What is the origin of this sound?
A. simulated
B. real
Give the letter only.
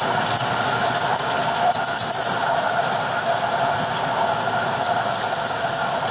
B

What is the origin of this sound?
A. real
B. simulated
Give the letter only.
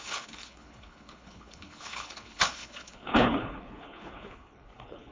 B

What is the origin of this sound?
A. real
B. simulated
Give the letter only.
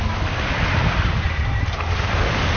A